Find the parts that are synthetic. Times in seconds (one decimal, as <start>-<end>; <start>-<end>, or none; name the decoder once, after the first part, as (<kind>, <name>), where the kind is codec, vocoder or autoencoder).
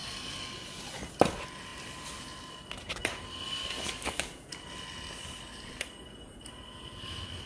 3.6-4.5 (codec, DAC)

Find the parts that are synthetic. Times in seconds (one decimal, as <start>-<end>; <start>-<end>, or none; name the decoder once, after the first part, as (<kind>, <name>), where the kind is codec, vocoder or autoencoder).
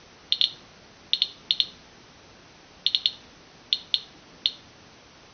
none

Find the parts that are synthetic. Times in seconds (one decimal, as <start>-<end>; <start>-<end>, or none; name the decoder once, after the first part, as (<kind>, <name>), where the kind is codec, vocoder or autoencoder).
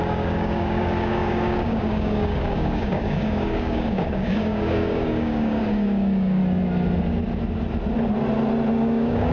0.0-6.4 (codec, DAC); 8.7-9.3